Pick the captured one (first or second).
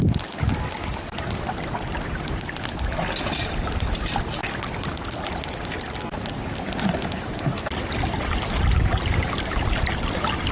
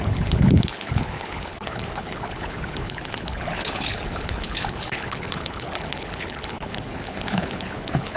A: first